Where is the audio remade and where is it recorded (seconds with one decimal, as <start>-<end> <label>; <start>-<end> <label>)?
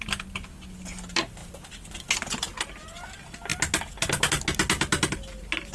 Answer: 0.0-5.7 recorded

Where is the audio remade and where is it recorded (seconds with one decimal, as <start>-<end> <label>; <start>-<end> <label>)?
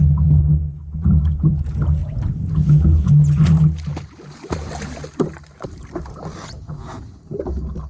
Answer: 0.0-0.8 recorded; 0.8-1.5 remade; 1.5-3.9 recorded; 3.9-7.1 remade; 7.1-7.9 recorded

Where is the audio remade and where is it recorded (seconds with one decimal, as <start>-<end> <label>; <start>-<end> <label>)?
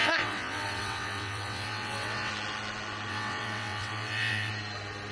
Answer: 0.0-2.3 remade; 2.3-3.1 recorded; 3.1-4.5 remade; 4.5-5.1 recorded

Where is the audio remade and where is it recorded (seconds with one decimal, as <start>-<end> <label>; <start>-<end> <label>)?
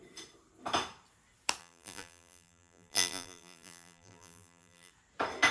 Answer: 0.0-1.6 recorded; 1.6-4.9 remade; 4.9-5.5 recorded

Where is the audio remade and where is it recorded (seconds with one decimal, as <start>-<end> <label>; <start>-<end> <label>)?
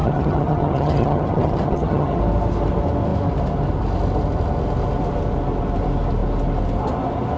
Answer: 0.0-2.2 remade; 2.2-7.4 recorded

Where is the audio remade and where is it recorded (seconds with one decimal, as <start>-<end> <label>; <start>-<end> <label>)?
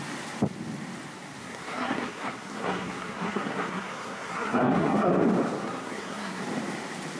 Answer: 0.0-1.4 recorded; 1.4-5.1 remade; 5.1-5.6 recorded; 5.6-6.4 remade; 6.4-7.2 recorded